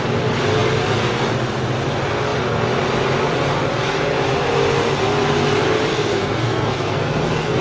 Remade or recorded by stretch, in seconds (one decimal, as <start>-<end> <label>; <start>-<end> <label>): 0.0-5.9 recorded; 5.9-7.6 remade